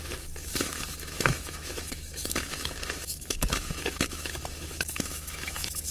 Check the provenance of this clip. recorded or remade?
remade